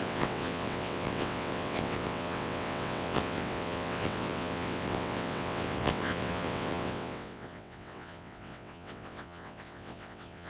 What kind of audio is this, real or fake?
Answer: fake